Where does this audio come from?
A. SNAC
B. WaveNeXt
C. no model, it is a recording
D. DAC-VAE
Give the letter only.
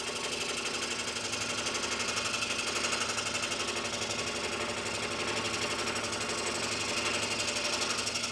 C